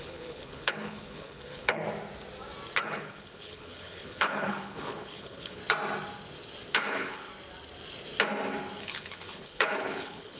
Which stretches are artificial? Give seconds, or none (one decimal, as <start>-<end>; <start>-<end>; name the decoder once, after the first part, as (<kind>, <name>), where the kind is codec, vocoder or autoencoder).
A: 0.0-1.8 (codec, HILCodec); 2.8-5.6; 6.7-7.3; 8.8-10.4

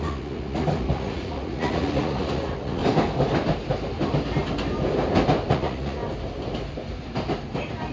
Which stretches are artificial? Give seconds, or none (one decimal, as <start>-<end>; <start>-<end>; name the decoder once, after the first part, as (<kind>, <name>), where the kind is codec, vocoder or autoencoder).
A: 0.0-2.8 (vocoder, Vocos); 5.5-6.0

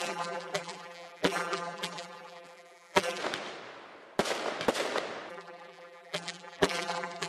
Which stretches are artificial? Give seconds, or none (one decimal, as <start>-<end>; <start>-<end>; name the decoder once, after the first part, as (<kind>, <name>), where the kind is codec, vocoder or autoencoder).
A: 0.0-3.2 (vocoder, BigVGAN v2); 5.3-7.3

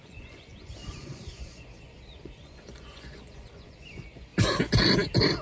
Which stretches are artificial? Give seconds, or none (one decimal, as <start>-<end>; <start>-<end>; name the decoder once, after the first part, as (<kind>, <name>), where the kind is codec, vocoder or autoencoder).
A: 0.0-4.3 (vocoder, Vocos)

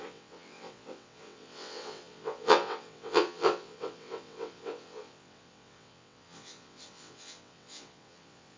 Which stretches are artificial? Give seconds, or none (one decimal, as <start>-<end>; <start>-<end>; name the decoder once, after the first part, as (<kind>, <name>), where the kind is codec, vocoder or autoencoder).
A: 0.0-8.6 (vocoder, WaveNeXt)

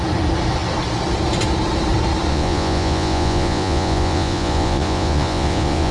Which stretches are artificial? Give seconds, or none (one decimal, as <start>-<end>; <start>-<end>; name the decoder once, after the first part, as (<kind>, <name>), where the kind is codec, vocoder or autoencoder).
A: 2.3-5.9 (vocoder, Vocos)

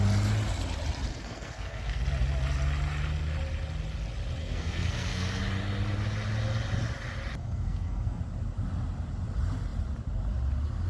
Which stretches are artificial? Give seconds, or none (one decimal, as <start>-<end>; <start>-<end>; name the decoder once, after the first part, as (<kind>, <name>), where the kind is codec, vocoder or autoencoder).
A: 1.1-2.0 (codec, SNAC); 4.4-5.4; 7.4-8.2